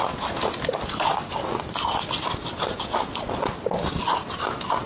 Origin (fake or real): real